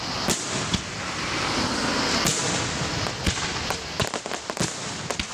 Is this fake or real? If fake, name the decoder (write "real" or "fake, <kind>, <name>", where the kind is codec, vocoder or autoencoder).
real